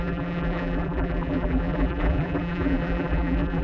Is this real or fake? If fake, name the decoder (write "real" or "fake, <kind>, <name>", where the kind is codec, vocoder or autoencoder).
fake, vocoder, BigVGAN v2